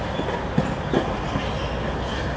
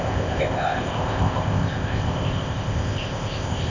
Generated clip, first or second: second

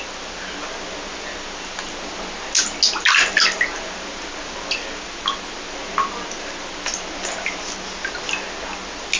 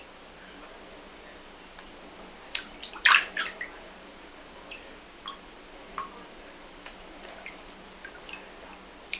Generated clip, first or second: second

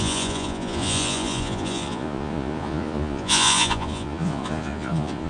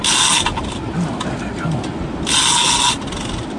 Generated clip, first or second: first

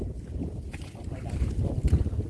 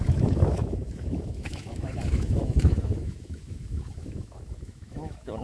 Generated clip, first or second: second